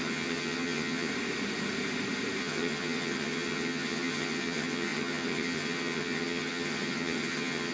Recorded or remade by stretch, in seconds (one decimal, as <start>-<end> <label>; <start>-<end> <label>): 0.0-1.1 remade; 1.1-2.4 recorded; 2.4-7.7 remade